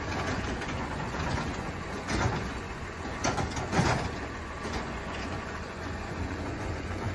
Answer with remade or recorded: remade